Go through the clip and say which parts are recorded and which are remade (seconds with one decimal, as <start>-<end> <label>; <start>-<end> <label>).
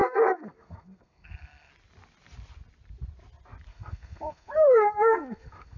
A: 0.0-1.7 remade; 1.7-3.7 recorded; 3.7-5.8 remade